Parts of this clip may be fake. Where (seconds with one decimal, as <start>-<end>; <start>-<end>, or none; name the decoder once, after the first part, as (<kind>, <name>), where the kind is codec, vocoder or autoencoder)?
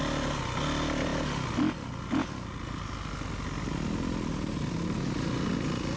none